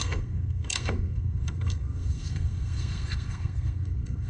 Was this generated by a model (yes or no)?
yes